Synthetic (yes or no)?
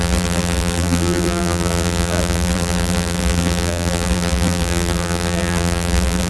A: yes